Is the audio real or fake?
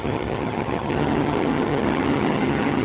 fake